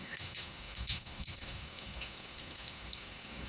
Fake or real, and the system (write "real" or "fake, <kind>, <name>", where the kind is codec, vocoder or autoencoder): fake, codec, SNAC